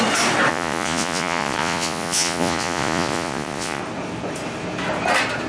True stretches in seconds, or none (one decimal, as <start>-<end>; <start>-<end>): 0.0-0.5; 3.8-5.5